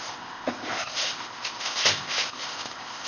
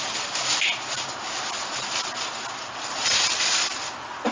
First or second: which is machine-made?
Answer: first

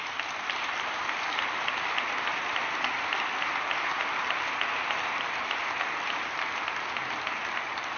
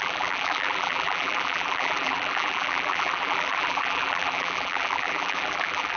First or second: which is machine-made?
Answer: second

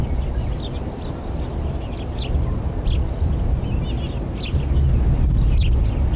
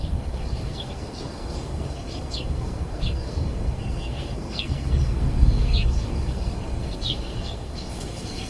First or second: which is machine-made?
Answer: second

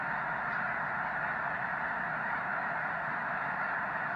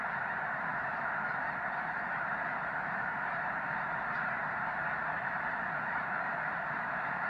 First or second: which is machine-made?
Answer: second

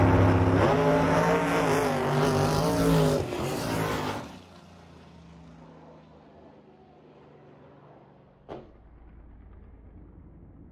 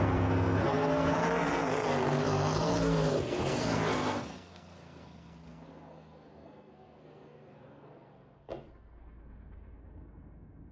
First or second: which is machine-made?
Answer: second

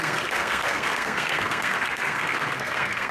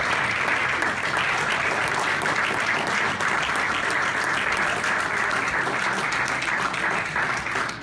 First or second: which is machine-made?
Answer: first